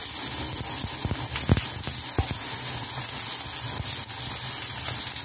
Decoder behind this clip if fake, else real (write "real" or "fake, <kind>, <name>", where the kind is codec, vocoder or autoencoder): real